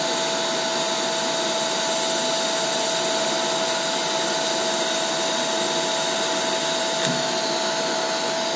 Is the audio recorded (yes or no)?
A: yes